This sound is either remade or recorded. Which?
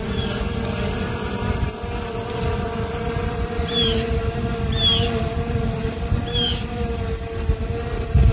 recorded